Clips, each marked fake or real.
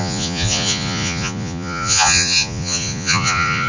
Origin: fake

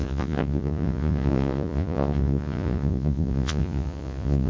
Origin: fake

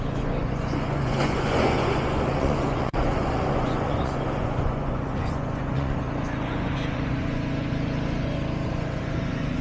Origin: fake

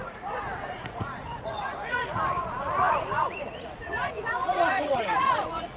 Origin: fake